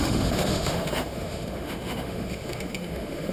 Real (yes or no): no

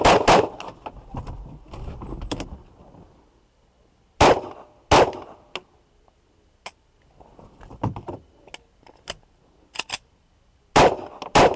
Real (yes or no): yes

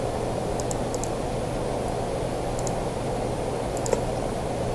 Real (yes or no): yes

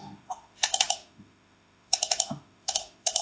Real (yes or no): no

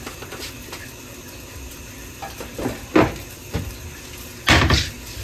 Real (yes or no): yes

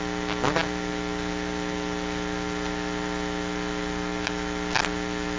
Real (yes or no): yes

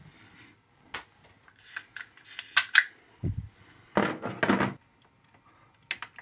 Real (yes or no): yes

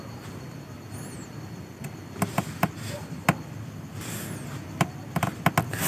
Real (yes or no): yes